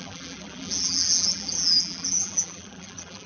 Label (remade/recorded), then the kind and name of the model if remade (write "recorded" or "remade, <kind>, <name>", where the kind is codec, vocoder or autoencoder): remade, vocoder, BigVGAN v2